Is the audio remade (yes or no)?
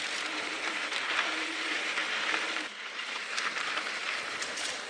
yes